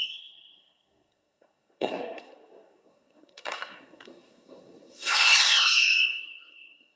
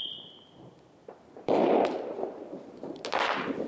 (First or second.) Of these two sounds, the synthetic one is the first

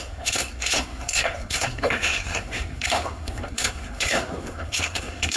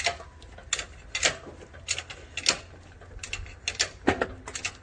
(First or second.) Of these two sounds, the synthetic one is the first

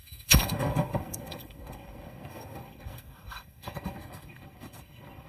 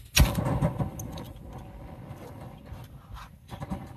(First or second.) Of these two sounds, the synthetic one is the first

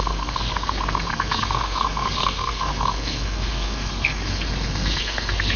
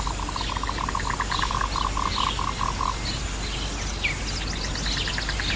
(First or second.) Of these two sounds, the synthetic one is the first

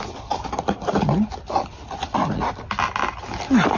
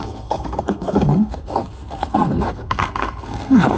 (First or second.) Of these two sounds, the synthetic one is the second